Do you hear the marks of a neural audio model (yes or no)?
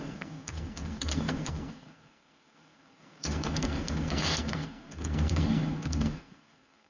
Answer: yes